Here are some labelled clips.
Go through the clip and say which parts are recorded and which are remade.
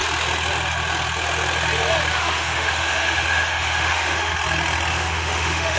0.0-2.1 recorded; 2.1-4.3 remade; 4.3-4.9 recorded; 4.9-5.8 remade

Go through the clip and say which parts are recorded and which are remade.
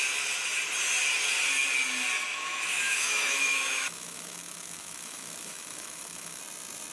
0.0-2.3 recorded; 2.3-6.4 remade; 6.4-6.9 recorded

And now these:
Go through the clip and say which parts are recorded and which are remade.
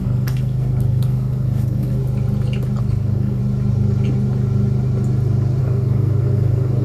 0.0-2.0 remade; 2.0-2.8 recorded; 2.8-3.4 remade; 3.4-5.6 recorded; 5.6-6.8 remade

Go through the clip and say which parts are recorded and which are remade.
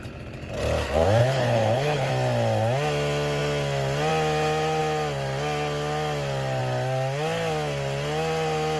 0.0-1.2 recorded; 1.2-2.1 remade; 2.1-8.8 recorded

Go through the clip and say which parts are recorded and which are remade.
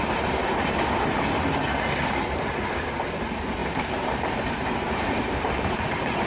0.0-3.6 recorded; 3.6-5.8 remade; 5.8-6.3 recorded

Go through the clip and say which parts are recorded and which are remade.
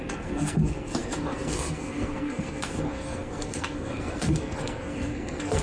0.0-5.6 remade